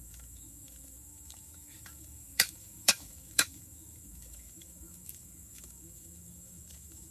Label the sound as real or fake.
fake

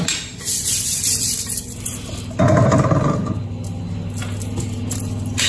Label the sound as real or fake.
real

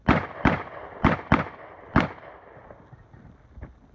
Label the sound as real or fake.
real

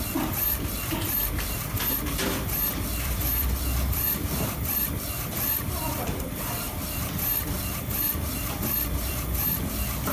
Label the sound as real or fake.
fake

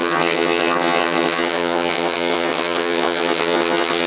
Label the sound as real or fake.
fake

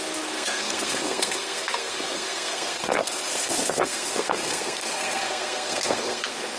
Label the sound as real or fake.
fake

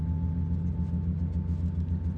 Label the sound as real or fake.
real